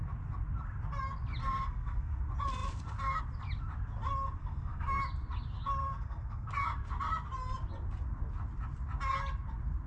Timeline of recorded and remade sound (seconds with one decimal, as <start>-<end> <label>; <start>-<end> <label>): 0.0-1.4 recorded; 1.4-2.2 remade; 2.2-4.4 recorded; 4.4-5.0 remade; 5.0-5.8 recorded; 5.8-6.5 remade; 6.5-9.9 recorded